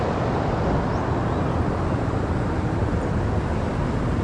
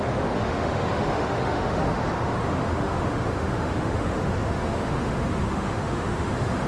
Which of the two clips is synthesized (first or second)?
second